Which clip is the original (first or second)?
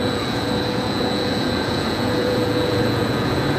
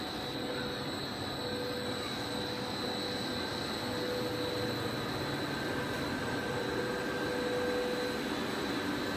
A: second